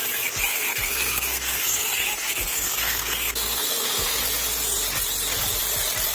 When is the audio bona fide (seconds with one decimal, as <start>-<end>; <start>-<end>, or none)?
0.0-0.5; 4.2-6.1